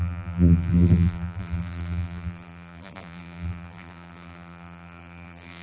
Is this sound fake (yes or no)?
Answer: yes